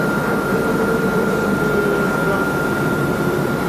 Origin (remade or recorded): remade